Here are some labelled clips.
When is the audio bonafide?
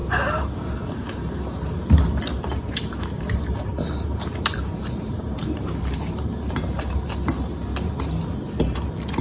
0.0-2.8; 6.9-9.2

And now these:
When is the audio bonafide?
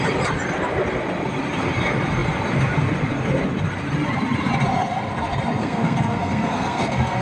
0.0-5.6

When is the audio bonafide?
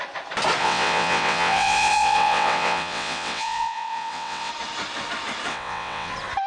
0.0-0.6; 4.5-5.5; 6.1-6.5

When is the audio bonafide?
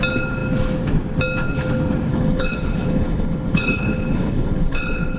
0.0-2.1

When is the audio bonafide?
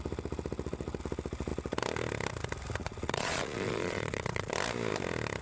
0.0-2.8; 4.5-5.4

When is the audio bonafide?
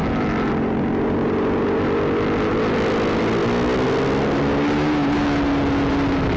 0.0-6.4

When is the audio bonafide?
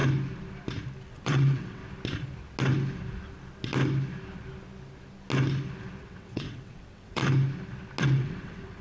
0.0-1.1; 1.8-6.0; 7.2-8.0